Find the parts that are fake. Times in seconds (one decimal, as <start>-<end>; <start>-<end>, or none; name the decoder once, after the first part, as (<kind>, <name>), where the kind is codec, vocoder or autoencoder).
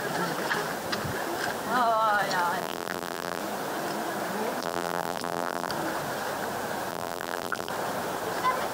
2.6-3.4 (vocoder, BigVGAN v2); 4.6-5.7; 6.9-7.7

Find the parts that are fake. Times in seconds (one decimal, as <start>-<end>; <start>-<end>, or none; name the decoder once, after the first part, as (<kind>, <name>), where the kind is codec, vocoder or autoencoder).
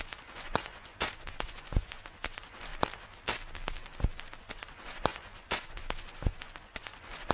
0.0-2.7 (vocoder, Vocos); 4.4-7.3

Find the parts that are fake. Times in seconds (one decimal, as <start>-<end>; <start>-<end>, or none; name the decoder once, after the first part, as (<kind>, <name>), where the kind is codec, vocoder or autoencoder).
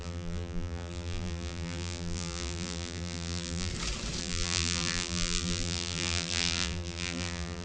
0.0-3.7 (vocoder, BigVGAN v2); 4.2-7.6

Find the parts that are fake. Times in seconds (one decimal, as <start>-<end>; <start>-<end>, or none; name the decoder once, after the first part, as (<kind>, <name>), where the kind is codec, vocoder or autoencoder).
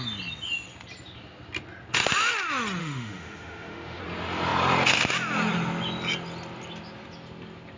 2.8-4.0 (autoencoder, DAC-VAE)